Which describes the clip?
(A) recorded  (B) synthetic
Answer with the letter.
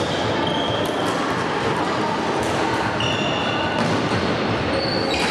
A